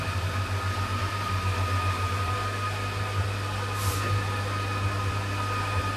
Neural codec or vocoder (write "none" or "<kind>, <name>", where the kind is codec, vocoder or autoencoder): none